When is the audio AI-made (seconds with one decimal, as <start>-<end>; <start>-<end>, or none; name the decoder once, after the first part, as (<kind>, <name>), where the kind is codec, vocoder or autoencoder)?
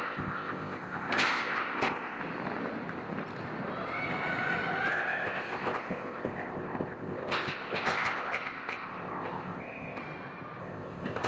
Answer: 0.0-2.2 (codec, ZipCodec); 4.9-10.0; 10.6-11.3